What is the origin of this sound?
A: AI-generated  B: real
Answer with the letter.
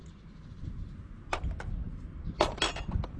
B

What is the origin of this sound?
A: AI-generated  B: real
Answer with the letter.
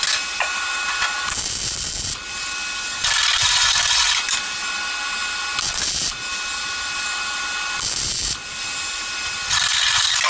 B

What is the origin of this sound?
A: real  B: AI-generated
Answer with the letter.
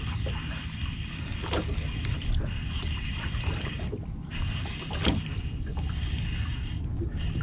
A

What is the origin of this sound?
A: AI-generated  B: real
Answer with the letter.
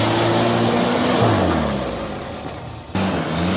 B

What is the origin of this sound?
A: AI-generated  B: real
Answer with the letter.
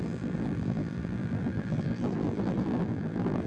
A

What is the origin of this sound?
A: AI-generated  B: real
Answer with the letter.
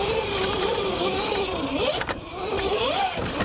A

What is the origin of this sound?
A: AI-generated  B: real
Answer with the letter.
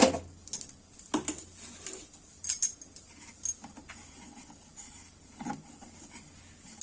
B